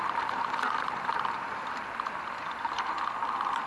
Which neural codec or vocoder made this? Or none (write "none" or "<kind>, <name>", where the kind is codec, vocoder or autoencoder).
vocoder, BigVGAN v2